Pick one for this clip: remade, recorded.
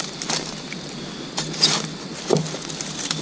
recorded